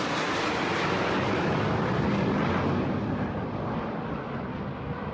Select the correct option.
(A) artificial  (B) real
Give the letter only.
B